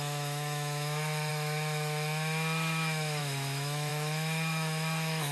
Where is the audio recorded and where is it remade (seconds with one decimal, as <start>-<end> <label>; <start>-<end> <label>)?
0.0-5.3 remade